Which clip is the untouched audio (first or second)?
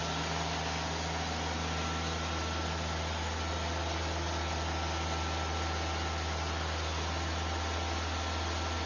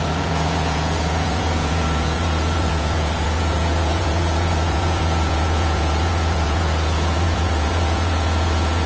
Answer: first